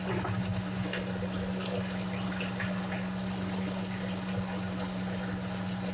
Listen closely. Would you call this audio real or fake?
real